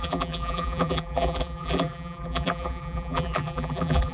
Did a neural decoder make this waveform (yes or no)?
yes